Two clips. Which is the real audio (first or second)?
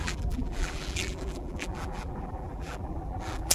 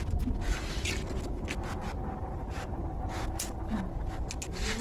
second